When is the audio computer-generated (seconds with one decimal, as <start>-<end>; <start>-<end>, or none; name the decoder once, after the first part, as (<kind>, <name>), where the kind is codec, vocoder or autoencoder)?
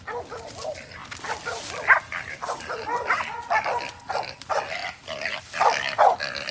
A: none